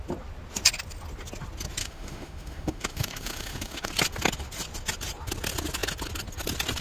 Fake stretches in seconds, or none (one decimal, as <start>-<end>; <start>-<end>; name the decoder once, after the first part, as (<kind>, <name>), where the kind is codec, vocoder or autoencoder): 1.8-3.9 (autoencoder, DAC-VAE)